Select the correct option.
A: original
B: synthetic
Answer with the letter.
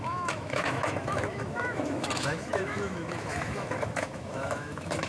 B